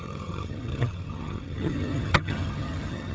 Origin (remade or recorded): remade